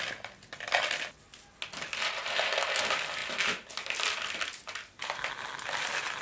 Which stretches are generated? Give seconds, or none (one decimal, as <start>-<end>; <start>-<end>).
none